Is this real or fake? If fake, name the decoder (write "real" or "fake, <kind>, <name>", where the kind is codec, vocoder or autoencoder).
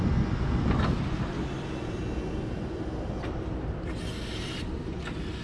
real